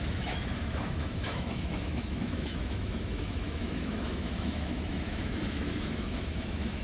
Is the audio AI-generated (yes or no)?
yes